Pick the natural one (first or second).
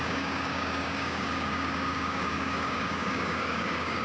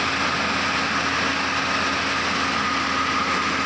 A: second